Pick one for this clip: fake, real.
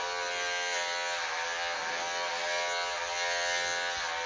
real